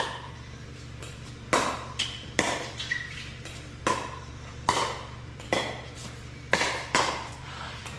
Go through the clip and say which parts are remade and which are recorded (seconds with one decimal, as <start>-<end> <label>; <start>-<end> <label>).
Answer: 0.0-6.0 remade; 6.0-7.3 recorded; 7.3-8.0 remade